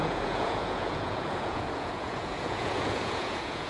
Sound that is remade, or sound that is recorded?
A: remade